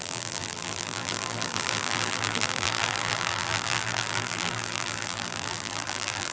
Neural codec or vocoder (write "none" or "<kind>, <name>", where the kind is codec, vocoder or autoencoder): vocoder, BigVGAN v2